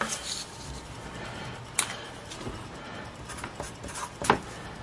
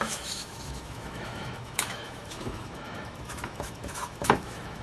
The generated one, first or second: second